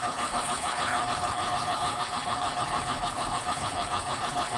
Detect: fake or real fake